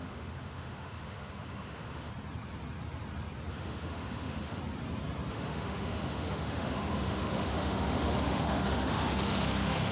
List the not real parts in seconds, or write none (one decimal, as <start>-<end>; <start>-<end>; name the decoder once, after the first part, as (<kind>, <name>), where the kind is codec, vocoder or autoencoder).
0.0-2.1 (autoencoder, DAC-VAE); 3.5-4.6; 5.3-9.9

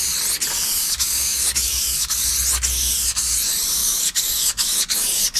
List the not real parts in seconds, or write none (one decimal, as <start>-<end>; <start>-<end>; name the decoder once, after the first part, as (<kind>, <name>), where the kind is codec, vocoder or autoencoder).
0.8-2.3 (codec, DAC); 3.8-5.4

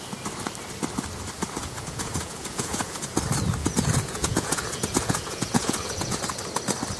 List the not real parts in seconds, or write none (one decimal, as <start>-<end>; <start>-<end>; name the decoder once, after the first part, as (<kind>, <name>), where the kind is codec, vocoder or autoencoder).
1.6-3.2 (vocoder, Vocos); 3.6-6.2

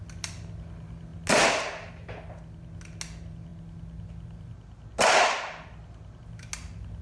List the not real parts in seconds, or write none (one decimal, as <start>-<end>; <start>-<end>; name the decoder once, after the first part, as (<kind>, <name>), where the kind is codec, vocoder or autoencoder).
none

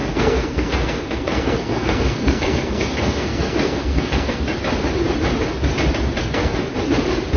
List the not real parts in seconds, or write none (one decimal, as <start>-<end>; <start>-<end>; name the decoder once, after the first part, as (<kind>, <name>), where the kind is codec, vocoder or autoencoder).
0.0-4.4 (codec, SNAC); 6.2-6.7

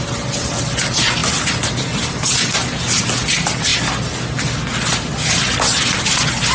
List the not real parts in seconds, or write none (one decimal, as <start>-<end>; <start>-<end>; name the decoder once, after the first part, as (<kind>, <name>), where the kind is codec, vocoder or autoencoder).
1.2-1.7 (vocoder, BigVGAN v2)

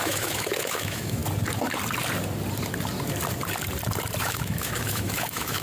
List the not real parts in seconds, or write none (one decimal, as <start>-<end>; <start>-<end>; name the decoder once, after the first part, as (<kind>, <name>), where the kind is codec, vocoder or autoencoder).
0.0-1.2 (autoencoder, DAC-VAE); 4.2-5.6

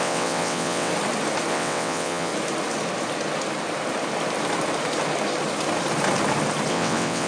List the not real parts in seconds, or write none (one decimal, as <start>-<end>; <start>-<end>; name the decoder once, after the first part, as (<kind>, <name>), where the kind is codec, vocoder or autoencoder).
0.0-0.9 (vocoder, WaveNeXt); 1.5-2.3; 6.7-7.3